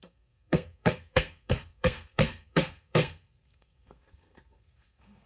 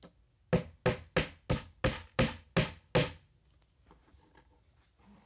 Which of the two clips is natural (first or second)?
second